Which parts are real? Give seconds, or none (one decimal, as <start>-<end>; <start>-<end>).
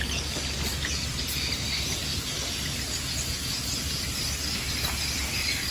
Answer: 0.0-5.7